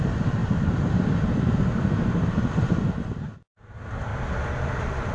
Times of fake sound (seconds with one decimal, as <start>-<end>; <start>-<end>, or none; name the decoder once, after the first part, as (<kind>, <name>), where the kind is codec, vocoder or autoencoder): none